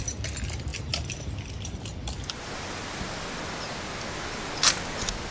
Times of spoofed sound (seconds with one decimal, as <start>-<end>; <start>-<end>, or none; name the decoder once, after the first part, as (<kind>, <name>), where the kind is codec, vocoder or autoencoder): 0.7-3.3 (vocoder, BigVGAN v2)